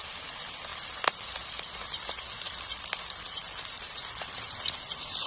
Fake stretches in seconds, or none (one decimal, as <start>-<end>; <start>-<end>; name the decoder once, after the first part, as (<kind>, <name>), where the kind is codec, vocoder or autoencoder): none